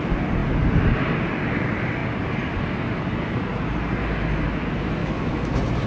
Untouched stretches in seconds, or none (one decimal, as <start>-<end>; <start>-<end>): 0.0-5.0; 5.5-5.9